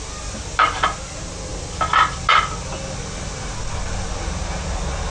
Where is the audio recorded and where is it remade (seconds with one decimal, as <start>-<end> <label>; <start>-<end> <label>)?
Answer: 0.0-5.1 recorded